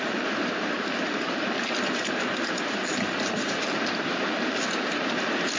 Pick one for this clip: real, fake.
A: fake